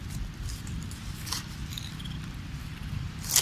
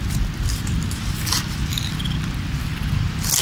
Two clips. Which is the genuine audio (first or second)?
second